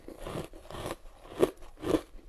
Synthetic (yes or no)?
yes